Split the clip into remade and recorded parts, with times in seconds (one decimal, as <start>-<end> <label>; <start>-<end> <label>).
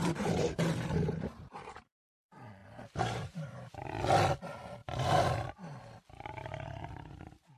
0.0-2.2 remade; 2.2-2.6 recorded; 2.6-3.7 remade; 3.7-4.8 recorded; 4.8-5.8 remade; 5.8-7.6 recorded